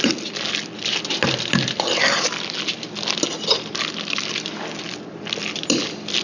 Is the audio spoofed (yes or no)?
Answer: no